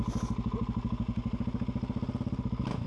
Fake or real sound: real